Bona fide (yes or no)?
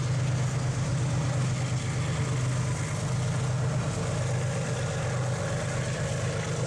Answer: yes